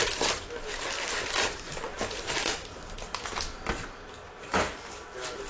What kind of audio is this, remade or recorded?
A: recorded